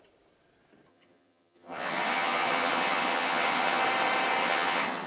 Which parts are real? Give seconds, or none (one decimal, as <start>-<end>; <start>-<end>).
0.0-0.9; 3.8-4.4